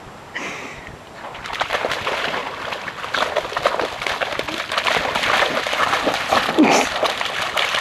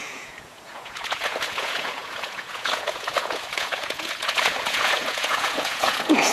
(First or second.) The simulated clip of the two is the second